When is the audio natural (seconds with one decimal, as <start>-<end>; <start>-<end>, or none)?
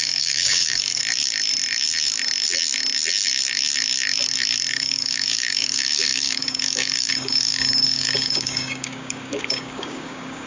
1.0-4.7